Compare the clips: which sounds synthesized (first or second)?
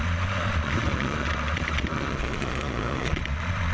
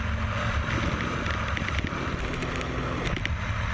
first